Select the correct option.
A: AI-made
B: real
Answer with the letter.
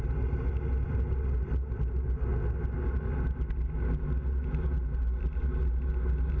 B